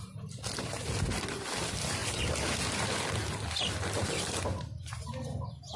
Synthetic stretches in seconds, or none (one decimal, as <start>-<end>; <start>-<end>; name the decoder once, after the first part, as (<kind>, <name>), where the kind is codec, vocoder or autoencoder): none